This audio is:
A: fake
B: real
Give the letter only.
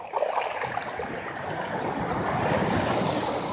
B